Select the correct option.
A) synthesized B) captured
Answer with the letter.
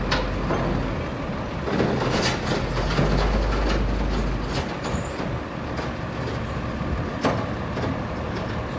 B